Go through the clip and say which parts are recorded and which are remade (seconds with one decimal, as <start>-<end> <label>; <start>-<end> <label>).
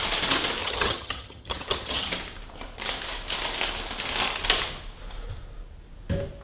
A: 0.0-0.6 recorded; 0.6-2.1 remade; 2.1-6.4 recorded